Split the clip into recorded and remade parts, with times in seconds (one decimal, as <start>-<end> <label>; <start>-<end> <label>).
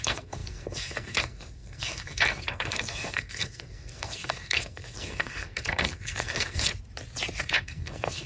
0.0-6.7 remade; 6.7-7.4 recorded; 7.4-8.3 remade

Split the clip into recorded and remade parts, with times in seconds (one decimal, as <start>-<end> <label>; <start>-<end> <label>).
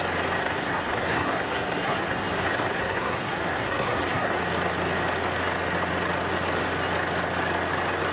0.0-0.4 recorded; 0.4-4.4 remade; 4.4-8.1 recorded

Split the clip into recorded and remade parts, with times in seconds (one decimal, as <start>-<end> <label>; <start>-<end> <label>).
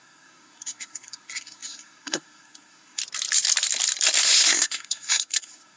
0.0-3.0 remade; 3.0-4.2 recorded; 4.2-5.8 remade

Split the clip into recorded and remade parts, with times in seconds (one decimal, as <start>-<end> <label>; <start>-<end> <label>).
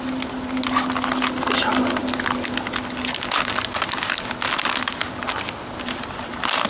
0.0-6.7 recorded